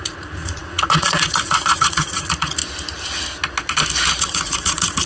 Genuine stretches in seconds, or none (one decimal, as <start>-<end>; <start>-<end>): 2.6-4.2